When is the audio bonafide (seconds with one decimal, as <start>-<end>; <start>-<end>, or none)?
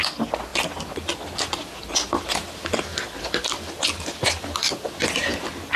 0.0-5.8